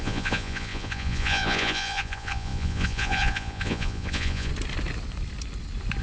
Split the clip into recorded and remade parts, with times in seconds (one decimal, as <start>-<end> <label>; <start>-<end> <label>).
0.0-4.5 remade; 4.5-6.0 recorded